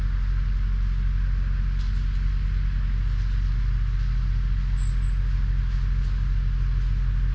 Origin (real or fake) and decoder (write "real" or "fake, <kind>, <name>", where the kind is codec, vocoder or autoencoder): real